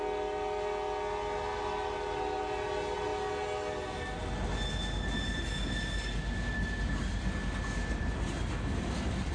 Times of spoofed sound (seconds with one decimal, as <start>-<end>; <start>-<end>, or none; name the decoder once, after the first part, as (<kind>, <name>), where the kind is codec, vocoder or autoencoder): none